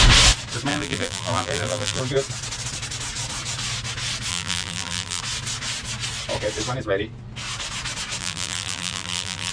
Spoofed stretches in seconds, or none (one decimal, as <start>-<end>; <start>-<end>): 0.7-2.0; 4.3-5.2; 8.2-9.5